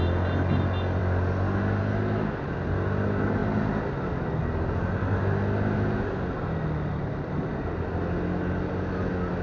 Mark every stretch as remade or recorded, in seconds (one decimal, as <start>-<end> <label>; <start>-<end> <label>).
0.0-9.4 recorded